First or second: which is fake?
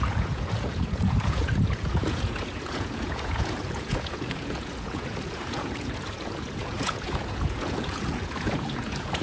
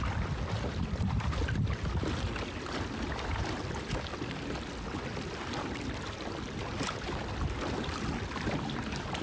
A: first